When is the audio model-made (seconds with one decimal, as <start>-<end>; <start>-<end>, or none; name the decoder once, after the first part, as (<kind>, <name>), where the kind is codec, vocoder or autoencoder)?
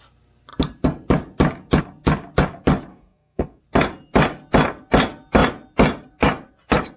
2.9-3.6 (codec, SNAC)